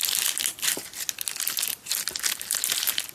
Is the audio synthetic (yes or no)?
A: no